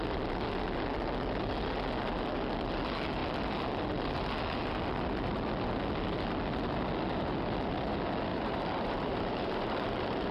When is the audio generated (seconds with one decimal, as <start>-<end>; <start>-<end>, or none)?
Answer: 8.3-10.3